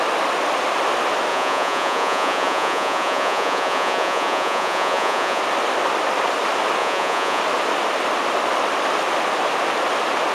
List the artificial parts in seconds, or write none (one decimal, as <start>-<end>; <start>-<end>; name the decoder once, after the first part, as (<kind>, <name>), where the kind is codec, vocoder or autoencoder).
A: 1.3-5.4 (vocoder, Vocos); 6.8-7.4